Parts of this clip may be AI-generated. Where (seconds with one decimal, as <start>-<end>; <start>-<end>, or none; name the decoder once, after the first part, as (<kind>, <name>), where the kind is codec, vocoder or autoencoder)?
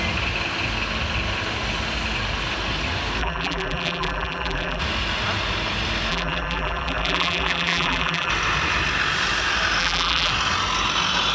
3.2-4.8 (vocoder, BigVGAN v2); 6.1-8.3; 9.8-10.3